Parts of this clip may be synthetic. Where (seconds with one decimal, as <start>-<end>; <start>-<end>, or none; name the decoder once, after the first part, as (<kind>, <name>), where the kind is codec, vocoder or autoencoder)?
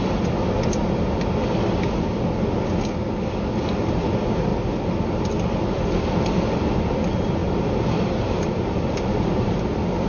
7.4-9.7 (vocoder, BigVGAN v2)